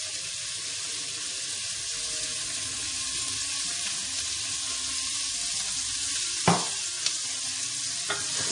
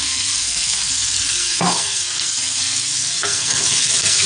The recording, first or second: first